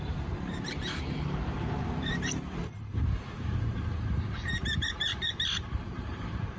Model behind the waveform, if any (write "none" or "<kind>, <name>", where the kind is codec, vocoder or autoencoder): vocoder, BigVGAN v2